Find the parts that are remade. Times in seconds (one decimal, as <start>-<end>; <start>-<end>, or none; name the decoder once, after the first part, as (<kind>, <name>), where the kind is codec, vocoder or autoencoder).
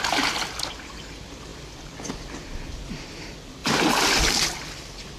3.6-4.2 (vocoder, BigVGAN v2)